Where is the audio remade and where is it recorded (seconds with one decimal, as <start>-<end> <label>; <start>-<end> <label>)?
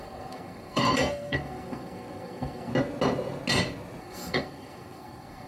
0.0-2.7 remade; 2.7-4.0 recorded; 4.0-5.5 remade